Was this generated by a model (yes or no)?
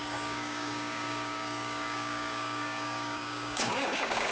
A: yes